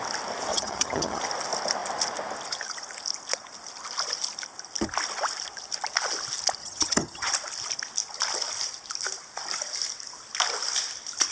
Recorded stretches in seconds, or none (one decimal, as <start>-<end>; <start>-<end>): 0.0-0.5; 1.2-6.6; 7.3-11.3